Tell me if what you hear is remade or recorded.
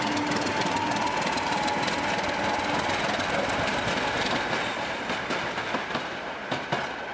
recorded